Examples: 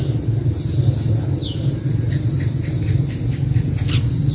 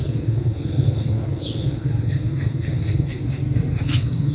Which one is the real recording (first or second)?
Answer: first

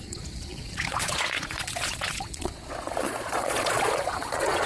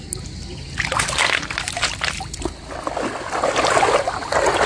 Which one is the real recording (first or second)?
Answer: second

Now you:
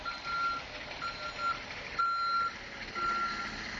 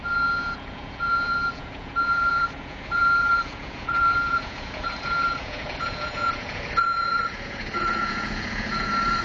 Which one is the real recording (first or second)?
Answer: first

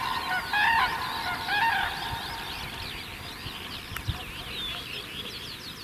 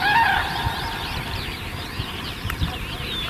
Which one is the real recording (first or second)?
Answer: first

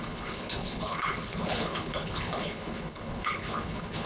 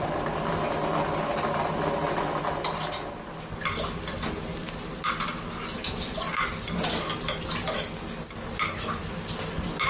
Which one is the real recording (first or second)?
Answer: second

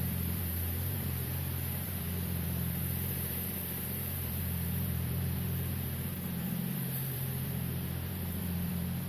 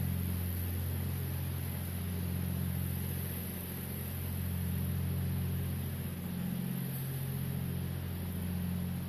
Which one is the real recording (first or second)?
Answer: second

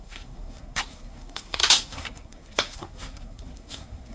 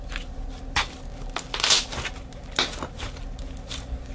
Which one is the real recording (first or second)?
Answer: second